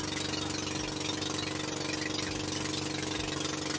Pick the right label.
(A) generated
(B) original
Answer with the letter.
B